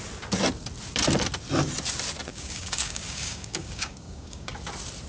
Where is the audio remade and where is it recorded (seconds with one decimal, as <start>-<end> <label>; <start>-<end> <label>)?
0.0-2.3 recorded; 2.3-4.5 remade; 4.5-5.1 recorded